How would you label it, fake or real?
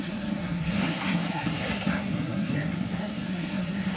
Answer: fake